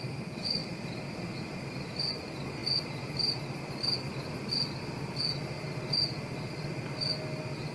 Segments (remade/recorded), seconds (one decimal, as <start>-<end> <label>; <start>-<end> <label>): 0.0-7.7 recorded